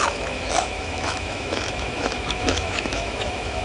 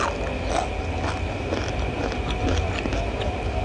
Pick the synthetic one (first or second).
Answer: first